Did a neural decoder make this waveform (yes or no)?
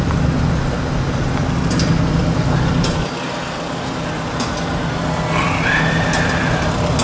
no